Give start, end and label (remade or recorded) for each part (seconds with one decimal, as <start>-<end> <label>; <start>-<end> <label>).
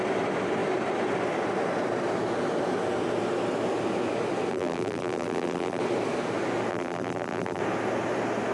0.0-4.5 recorded; 4.5-5.8 remade; 5.8-6.7 recorded; 6.7-7.6 remade; 7.6-8.5 recorded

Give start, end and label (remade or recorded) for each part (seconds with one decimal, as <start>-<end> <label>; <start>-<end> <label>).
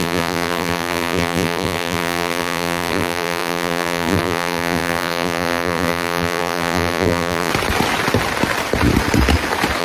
0.0-7.5 remade; 7.5-9.8 recorded